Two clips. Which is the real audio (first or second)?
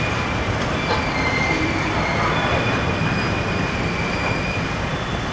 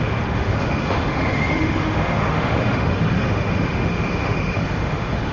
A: first